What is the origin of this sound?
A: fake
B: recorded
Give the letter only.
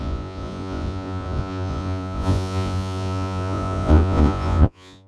A